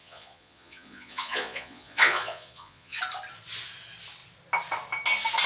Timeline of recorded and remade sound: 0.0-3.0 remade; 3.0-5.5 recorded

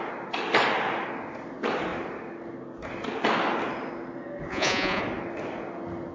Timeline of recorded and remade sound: 0.0-4.5 recorded; 4.5-5.0 remade; 5.0-6.1 recorded

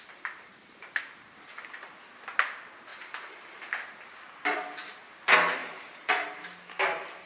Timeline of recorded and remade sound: 0.0-2.9 recorded; 2.9-3.6 remade; 3.6-5.6 recorded; 5.6-6.5 remade; 6.5-7.3 recorded

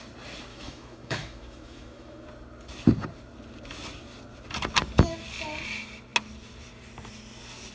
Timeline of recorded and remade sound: 0.0-0.5 recorded; 0.5-2.3 remade; 2.3-7.7 recorded

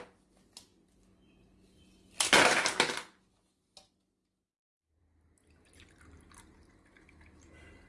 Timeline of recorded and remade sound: 0.0-7.9 recorded

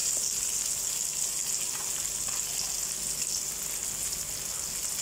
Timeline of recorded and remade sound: 0.0-5.0 recorded

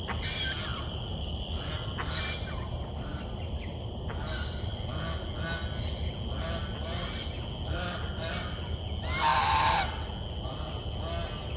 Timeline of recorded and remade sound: 0.0-11.6 recorded

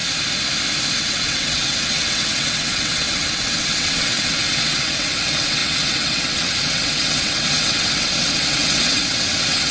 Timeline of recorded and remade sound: 0.0-1.0 recorded; 1.0-9.7 remade